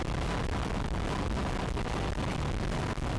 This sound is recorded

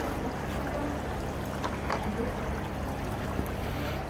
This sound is recorded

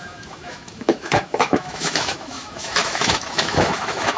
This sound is remade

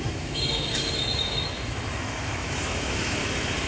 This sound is remade